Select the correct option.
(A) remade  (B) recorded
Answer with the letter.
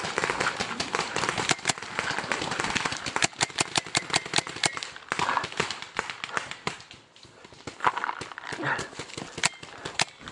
A